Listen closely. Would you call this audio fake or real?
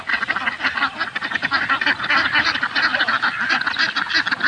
real